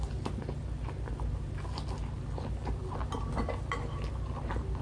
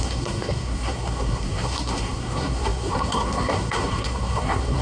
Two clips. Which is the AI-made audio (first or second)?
second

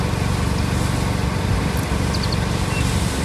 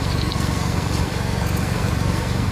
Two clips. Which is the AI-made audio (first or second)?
second